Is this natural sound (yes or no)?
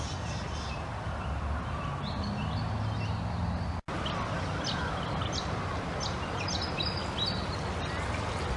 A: yes